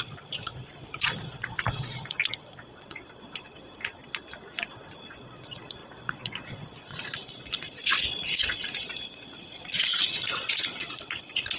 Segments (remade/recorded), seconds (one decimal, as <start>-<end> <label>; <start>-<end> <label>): 0.0-4.0 remade; 4.0-4.6 recorded; 4.6-11.6 remade